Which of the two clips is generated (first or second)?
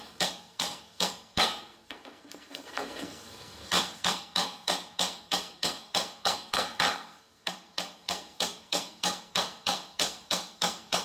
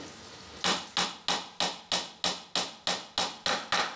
first